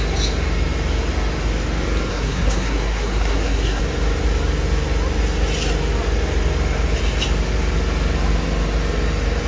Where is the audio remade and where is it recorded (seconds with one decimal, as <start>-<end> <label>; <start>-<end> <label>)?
0.0-2.1 recorded; 2.1-3.8 remade; 3.8-9.5 recorded